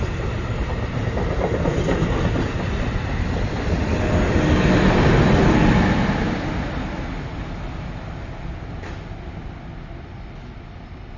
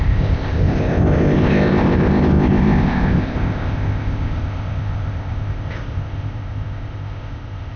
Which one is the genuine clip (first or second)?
first